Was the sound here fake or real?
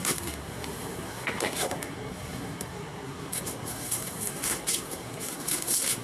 fake